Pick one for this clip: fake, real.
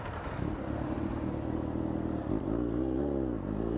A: real